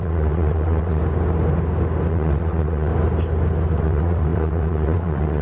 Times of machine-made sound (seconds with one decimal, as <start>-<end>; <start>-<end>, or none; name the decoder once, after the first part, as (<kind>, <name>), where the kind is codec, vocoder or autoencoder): 0.0-1.0 (vocoder, WaveNeXt); 2.1-2.9; 3.7-5.4